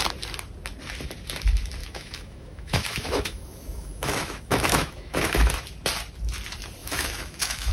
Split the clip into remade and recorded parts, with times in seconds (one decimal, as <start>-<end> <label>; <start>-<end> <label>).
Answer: 0.0-1.8 recorded; 1.8-5.5 remade; 5.5-6.8 recorded; 6.8-7.7 remade

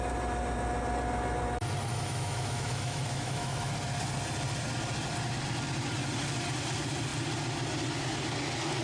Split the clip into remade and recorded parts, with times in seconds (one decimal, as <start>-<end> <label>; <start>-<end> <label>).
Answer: 0.0-1.9 recorded; 1.9-3.7 remade; 3.7-8.8 recorded

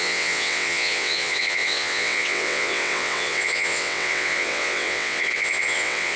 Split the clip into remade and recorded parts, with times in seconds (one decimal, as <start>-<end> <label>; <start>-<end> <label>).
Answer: 0.0-6.2 remade

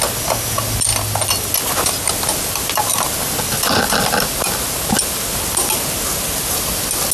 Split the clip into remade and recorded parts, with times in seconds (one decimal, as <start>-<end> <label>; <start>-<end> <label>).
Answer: 0.0-7.1 recorded

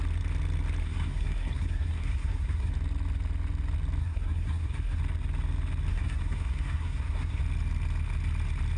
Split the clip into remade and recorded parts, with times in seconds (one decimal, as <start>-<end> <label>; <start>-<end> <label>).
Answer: 0.0-0.8 recorded; 0.8-2.7 remade; 2.7-4.0 recorded; 4.0-5.0 remade; 5.0-5.9 recorded; 5.9-7.4 remade; 7.4-8.8 recorded

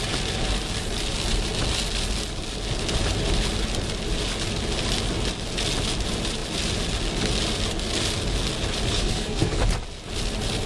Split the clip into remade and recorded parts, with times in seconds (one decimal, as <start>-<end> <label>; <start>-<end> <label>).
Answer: 0.0-8.9 recorded; 8.9-9.6 remade; 9.6-10.7 recorded

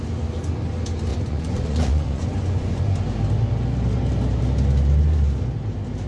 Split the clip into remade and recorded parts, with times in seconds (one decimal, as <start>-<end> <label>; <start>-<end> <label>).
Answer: 0.0-1.1 recorded; 1.1-2.8 remade; 2.8-6.1 recorded

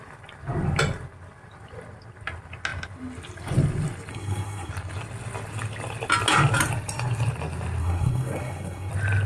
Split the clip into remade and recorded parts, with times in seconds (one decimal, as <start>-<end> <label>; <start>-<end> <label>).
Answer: 0.0-4.1 recorded; 4.1-4.7 remade; 4.7-7.8 recorded; 7.8-8.9 remade; 8.9-9.3 recorded